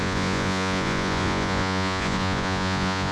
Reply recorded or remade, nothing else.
remade